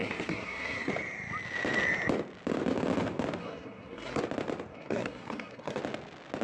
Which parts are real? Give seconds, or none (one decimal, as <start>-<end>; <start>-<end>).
0.9-3.4; 4.2-4.7; 5.8-6.4